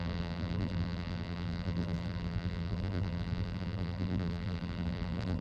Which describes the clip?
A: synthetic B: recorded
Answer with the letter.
A